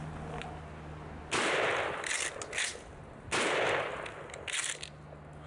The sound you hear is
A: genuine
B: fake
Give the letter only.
A